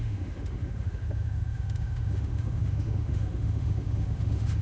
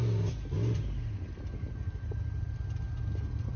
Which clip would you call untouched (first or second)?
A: second